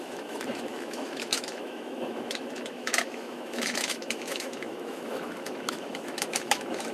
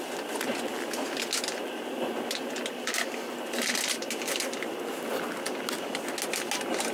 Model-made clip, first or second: first